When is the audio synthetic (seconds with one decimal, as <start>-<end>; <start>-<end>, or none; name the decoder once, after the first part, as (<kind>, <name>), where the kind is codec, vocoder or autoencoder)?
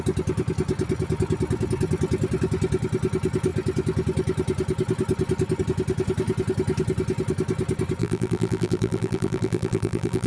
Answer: 8.0-10.3 (vocoder, BigVGAN v2)